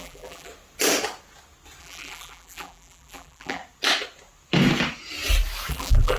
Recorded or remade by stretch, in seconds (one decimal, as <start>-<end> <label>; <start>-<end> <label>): 0.0-0.5 remade; 0.5-1.8 recorded; 1.8-3.6 remade; 3.6-5.7 recorded; 5.7-6.2 remade